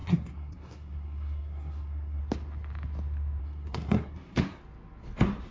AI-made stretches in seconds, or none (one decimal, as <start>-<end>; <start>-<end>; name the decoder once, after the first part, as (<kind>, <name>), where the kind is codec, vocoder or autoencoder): 0.0-2.2 (codec, SNAC); 3.4-4.6